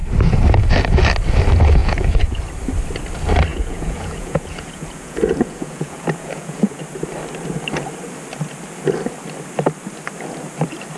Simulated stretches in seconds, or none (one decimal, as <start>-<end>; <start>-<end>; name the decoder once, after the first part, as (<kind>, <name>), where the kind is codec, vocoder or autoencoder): 1.8-2.4 (vocoder, Vocos); 3.5-6.8